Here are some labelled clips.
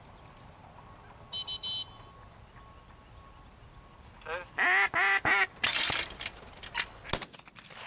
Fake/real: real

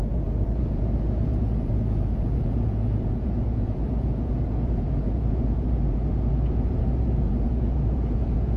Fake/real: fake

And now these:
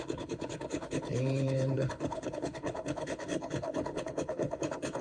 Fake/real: fake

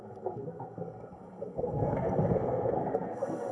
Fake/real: fake